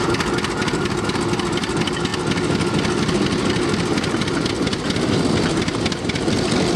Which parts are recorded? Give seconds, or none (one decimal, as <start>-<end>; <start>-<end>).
2.1-4.5